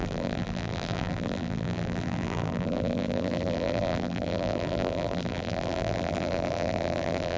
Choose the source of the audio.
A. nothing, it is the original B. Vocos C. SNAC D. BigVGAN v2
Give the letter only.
D